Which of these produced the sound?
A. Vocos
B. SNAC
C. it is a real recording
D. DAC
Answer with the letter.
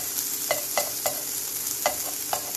C